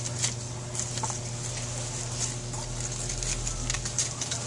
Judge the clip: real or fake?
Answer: real